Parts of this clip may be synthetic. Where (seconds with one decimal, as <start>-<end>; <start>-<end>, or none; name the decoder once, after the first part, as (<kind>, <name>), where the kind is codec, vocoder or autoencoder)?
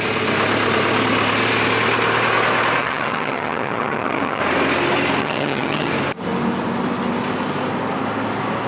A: 2.8-4.4 (vocoder, HiFi-GAN); 5.2-5.9